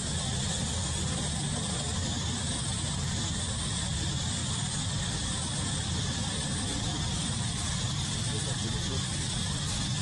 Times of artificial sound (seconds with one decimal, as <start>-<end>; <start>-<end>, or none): 2.0-2.8; 4.4-8.3